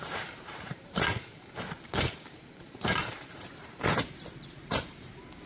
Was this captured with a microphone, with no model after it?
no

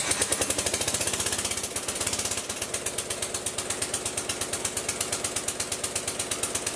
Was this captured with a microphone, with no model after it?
yes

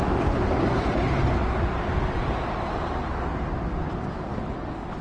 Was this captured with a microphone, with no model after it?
yes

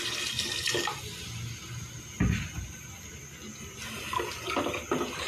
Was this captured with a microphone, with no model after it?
yes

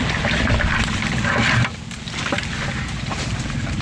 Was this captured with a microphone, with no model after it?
no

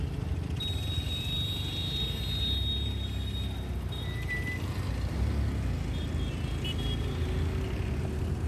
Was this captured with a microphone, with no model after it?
yes